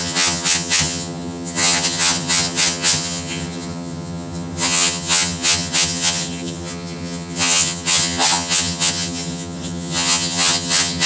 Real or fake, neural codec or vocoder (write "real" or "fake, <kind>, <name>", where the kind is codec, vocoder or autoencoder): fake, vocoder, HiFi-GAN